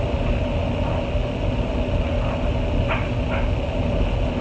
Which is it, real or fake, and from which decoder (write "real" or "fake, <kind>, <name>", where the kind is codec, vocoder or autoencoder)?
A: real